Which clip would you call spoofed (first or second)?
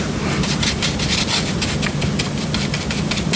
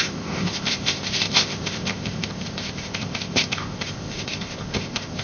second